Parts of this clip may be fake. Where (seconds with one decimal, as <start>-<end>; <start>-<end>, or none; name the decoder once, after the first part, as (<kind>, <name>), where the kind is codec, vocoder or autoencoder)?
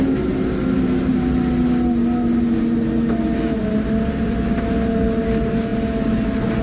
none